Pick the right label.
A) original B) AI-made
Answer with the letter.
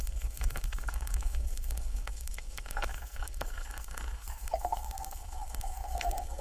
B